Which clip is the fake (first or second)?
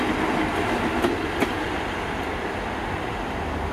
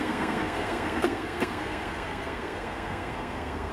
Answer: second